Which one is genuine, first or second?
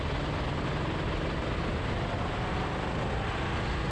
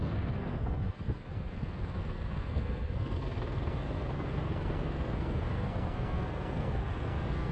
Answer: first